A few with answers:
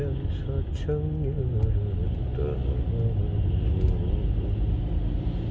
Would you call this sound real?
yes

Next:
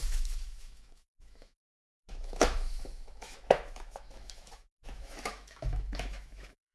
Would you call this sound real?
no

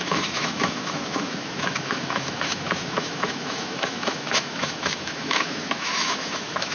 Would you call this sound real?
no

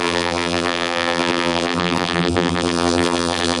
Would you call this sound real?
no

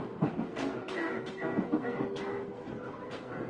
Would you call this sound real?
no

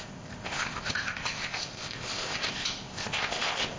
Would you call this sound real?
no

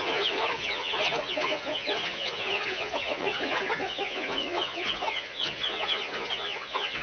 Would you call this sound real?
no